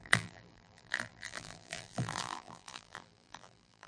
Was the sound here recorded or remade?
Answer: remade